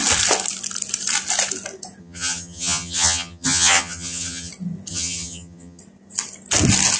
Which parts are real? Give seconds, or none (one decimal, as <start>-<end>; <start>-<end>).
0.0-2.0; 4.5-4.9; 5.8-7.0